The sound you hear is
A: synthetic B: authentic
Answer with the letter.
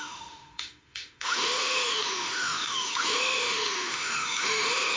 A